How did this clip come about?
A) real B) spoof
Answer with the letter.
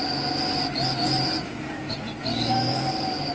A